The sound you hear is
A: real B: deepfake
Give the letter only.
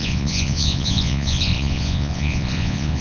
B